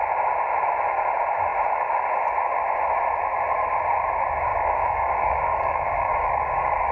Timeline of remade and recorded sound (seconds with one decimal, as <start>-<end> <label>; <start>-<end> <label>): 0.0-4.5 recorded; 4.5-6.9 remade